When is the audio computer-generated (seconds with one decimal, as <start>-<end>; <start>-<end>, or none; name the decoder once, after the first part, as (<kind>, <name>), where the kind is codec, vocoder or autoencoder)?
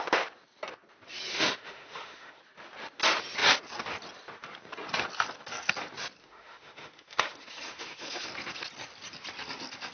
1.3-2.4 (autoencoder, DAC-VAE); 6.2-8.3